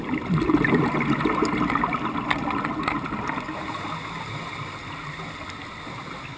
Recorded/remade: recorded